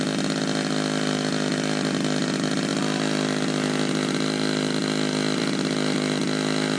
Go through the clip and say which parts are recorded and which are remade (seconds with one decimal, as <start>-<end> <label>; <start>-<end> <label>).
0.0-6.8 recorded